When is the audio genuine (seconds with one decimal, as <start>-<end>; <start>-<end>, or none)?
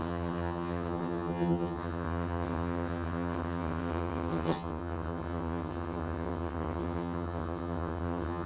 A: none